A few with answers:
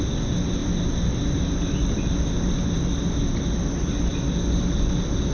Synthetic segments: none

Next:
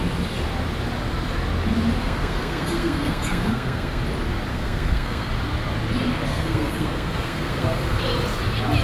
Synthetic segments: 2.0-4.0 (codec, SNAC); 4.5-5.3; 6.3-8.0

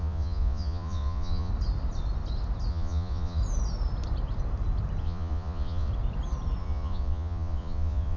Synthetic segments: 0.0-1.5 (vocoder, Vocos); 2.7-3.4; 5.0-5.9; 6.6-8.2

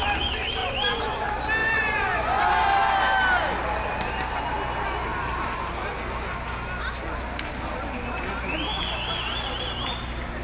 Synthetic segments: 0.6-1.2 (vocoder, Vocos); 1.6-2.4

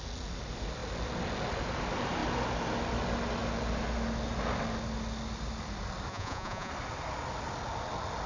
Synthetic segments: 6.1-6.7 (vocoder, Vocos)

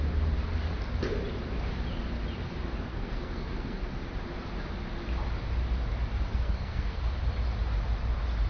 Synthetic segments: 2.9-3.9 (codec, SNAC); 6.3-7.0

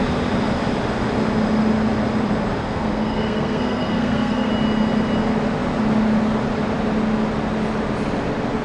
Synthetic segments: 2.6-4.5 (codec, SNAC)